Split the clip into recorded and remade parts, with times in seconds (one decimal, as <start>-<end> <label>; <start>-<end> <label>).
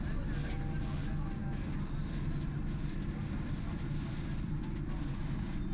0.0-5.7 recorded